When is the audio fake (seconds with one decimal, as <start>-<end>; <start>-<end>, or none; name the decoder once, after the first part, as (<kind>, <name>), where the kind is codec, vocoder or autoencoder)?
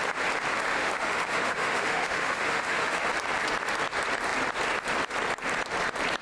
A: 0.7-3.1 (autoencoder, DAC-VAE)